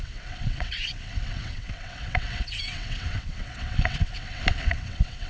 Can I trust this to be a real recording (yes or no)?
no